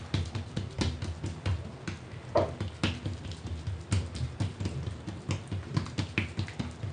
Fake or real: real